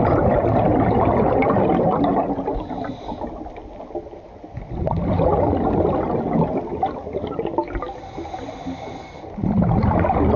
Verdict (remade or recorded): recorded